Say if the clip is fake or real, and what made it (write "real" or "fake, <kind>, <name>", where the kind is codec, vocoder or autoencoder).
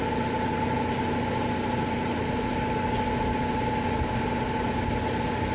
real